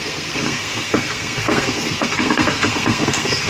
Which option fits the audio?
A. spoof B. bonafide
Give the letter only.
A